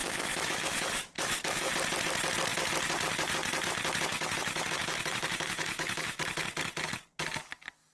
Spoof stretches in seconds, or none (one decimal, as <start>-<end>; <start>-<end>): 0.0-1.7; 4.1-6.2